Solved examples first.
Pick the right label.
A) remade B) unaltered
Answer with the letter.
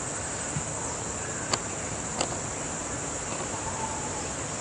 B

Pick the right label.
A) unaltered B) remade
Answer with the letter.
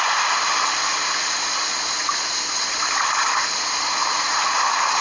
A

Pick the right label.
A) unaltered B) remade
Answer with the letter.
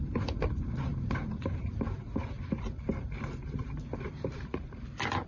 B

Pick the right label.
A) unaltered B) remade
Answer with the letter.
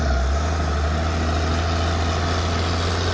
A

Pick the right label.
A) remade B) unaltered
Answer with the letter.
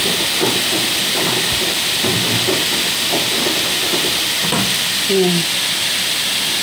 B